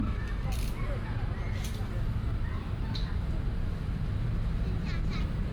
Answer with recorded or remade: recorded